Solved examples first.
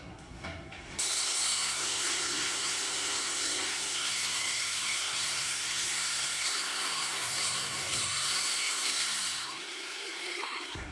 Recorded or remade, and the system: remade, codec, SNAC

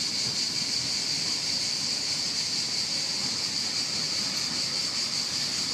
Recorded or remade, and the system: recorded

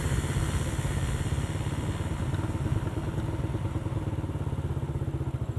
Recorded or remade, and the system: recorded